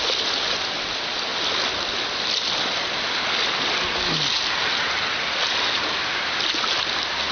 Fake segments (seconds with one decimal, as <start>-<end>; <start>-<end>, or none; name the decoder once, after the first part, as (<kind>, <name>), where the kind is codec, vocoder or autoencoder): none